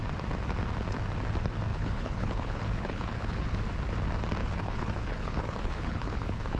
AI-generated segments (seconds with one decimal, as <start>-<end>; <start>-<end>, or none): 1.7-3.6; 4.4-6.6